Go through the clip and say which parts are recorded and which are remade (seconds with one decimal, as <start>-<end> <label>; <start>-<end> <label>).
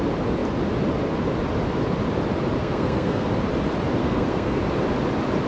0.0-2.6 recorded; 2.6-3.3 remade; 3.3-4.0 recorded; 4.0-4.6 remade; 4.6-5.5 recorded